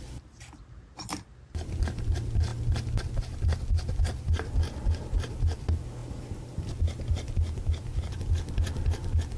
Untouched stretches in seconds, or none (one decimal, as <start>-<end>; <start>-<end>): 0.0-9.4